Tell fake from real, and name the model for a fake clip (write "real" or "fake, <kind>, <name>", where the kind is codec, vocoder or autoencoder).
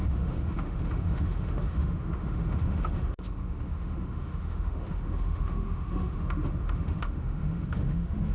fake, autoencoder, DAC-VAE